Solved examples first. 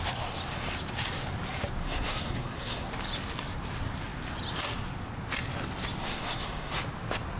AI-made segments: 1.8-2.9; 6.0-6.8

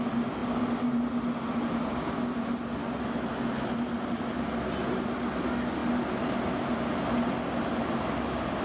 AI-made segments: none

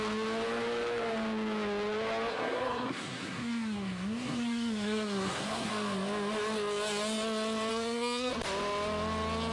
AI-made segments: 2.3-5.7; 7.7-8.3

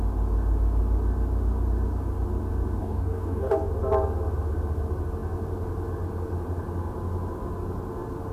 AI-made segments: 2.8-3.7

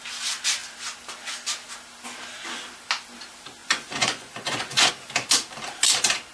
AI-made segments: 3.6-4.9

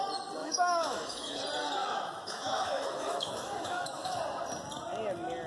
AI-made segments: 0.4-1.4; 1.8-4.2

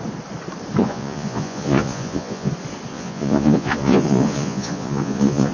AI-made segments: 0.8-2.5; 2.9-5.5

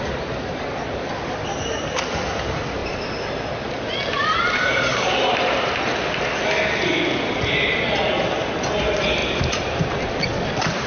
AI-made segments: 2.8-3.4; 4.2-5.9; 9.2-10.0